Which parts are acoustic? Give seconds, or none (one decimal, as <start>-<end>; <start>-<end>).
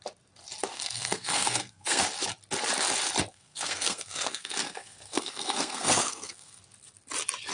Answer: 0.0-0.7; 2.0-3.3; 6.6-7.5